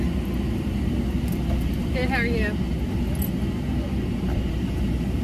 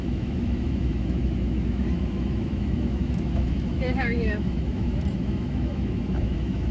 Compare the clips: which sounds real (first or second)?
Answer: first